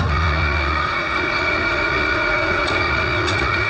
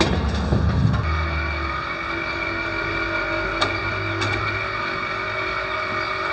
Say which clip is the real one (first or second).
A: second